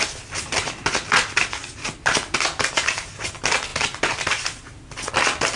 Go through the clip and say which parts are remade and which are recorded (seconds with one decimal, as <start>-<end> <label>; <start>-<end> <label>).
0.0-5.6 recorded